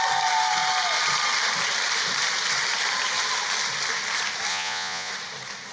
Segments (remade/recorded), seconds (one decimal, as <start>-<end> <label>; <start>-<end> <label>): 0.0-4.5 recorded; 4.5-5.1 remade; 5.1-5.7 recorded